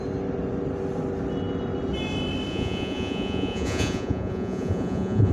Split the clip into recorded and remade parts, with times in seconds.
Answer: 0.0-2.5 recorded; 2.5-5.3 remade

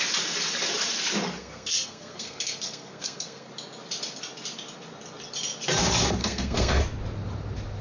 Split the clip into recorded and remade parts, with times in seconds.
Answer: 0.0-1.4 recorded; 1.4-3.5 remade; 3.5-6.2 recorded; 6.2-6.8 remade; 6.8-7.8 recorded

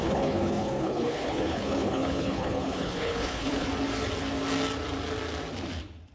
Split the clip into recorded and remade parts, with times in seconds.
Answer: 0.0-3.7 remade; 3.7-6.1 recorded